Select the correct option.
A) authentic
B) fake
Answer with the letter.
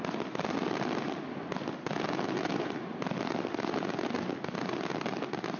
A